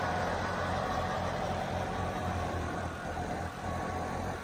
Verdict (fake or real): fake